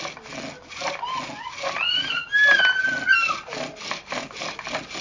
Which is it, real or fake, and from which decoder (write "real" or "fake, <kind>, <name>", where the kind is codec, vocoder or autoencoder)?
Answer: real